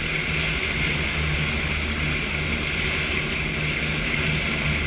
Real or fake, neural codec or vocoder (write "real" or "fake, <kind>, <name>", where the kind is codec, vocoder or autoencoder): real